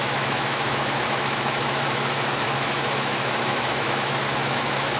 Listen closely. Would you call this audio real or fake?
fake